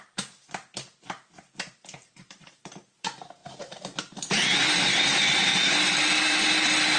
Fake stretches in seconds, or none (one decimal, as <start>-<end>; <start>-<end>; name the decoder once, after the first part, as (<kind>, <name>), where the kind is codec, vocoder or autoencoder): 0.0-3.4 (vocoder, BigVGAN v2); 4.0-5.5; 6.1-7.0